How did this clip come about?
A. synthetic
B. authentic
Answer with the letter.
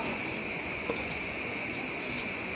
A